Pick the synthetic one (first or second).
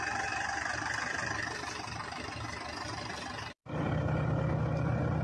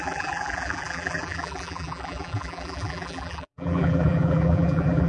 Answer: second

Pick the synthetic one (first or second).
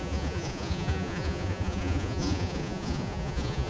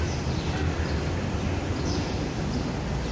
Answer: first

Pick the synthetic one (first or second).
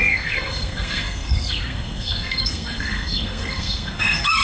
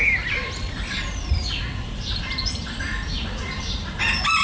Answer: first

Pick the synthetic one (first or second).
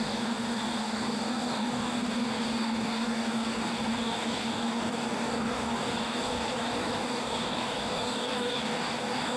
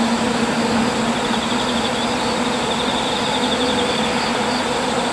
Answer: first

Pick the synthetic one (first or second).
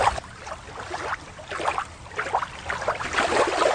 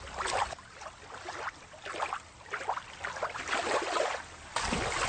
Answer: first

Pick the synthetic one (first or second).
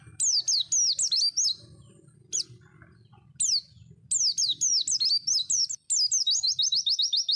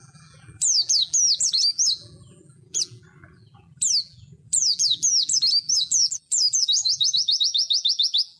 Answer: second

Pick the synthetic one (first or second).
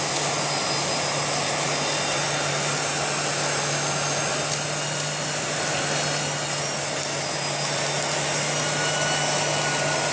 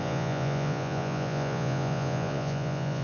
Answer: second